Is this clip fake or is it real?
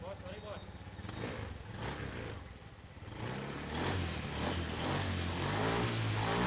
real